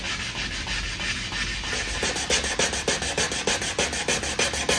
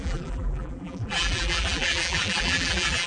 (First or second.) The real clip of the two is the first